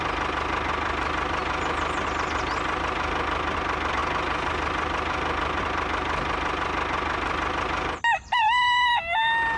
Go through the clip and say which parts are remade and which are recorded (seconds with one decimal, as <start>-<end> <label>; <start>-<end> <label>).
0.0-9.6 recorded